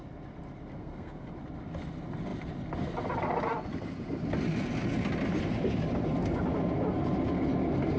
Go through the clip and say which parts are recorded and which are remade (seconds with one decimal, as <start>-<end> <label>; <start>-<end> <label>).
0.0-0.8 recorded; 0.8-1.3 remade; 1.3-8.0 recorded